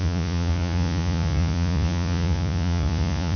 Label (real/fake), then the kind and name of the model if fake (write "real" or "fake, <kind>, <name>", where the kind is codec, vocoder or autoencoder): fake, vocoder, Vocos